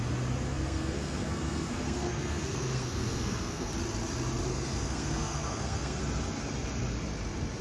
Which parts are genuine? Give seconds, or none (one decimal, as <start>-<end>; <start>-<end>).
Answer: 0.0-0.5; 3.7-4.5; 6.0-7.6